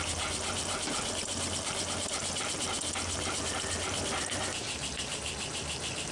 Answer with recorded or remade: recorded